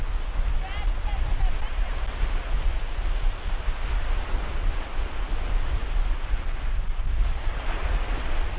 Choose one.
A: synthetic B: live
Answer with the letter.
B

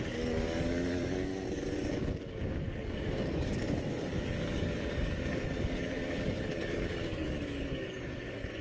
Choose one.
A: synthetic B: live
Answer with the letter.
A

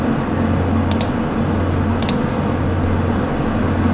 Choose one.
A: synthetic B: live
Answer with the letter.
B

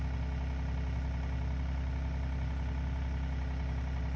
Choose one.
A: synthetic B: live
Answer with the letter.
B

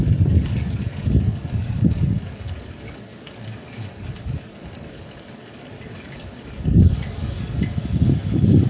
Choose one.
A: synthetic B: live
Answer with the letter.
A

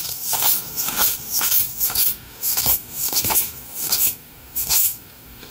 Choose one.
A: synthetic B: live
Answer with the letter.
A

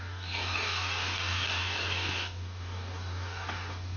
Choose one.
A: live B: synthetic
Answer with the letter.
B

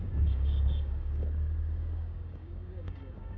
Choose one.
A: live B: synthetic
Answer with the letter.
B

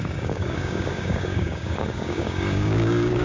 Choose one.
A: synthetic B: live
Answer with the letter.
A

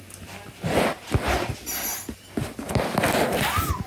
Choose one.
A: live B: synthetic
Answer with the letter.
A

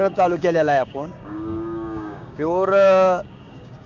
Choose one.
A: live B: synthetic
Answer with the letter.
B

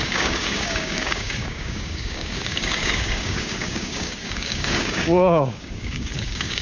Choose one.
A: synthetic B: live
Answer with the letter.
A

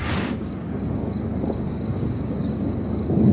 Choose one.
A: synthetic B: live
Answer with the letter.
A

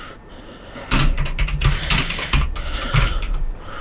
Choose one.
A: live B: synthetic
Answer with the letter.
A